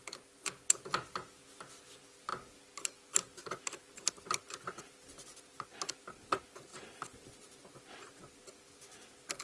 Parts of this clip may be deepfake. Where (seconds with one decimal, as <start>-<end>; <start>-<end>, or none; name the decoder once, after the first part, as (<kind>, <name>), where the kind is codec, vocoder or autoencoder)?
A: 6.7-8.0 (vocoder, BigVGAN v2)

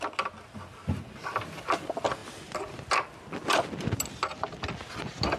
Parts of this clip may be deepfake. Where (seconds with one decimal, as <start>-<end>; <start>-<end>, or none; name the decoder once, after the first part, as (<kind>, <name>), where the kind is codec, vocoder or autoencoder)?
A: none